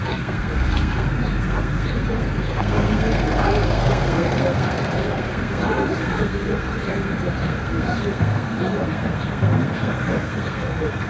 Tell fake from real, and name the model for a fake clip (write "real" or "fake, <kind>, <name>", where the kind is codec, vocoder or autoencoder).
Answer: fake, codec, SNAC